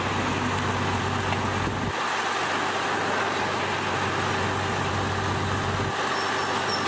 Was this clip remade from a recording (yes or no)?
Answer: no